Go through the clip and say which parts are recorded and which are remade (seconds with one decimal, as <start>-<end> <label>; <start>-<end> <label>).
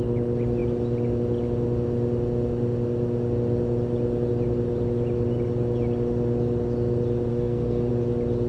0.0-7.3 recorded; 7.3-7.9 remade; 7.9-8.5 recorded